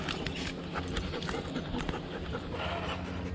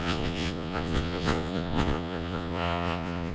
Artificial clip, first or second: second